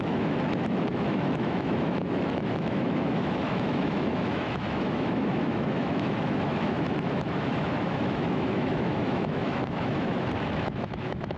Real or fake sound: fake